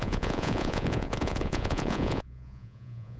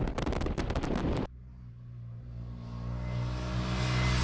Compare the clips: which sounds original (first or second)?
second